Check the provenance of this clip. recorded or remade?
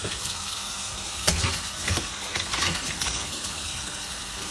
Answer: remade